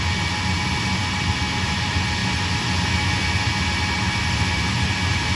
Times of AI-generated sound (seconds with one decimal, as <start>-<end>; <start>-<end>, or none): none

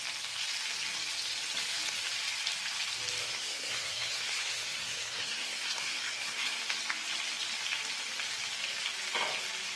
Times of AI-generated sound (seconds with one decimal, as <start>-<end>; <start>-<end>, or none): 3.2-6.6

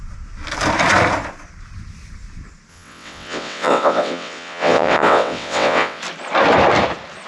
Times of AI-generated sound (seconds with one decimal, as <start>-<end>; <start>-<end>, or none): 2.7-6.0

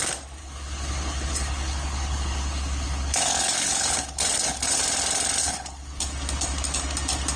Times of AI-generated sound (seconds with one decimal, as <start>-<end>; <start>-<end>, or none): 0.4-4.8; 5.4-6.0

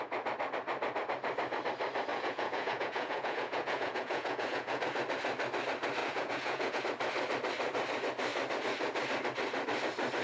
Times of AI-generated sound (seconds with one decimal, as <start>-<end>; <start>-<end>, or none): 2.1-4.8; 6.0-6.8